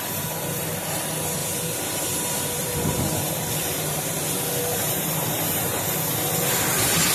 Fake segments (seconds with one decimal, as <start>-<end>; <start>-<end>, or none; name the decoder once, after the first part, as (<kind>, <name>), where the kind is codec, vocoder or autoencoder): 1.4-4.2 (vocoder, BigVGAN v2); 4.7-5.8